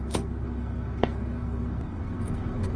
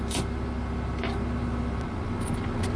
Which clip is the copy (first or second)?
first